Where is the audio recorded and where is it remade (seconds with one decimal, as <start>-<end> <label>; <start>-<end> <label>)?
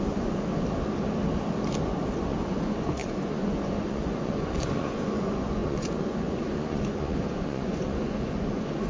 0.0-0.5 remade; 0.5-2.2 recorded; 2.2-8.9 remade